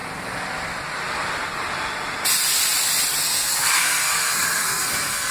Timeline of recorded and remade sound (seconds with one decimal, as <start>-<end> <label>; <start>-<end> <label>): 0.0-3.2 recorded; 3.2-5.3 remade